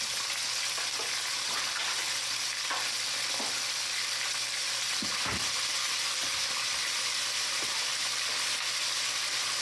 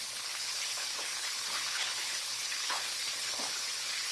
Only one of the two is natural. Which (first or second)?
first